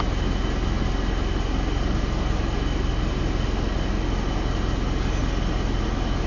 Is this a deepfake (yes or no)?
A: no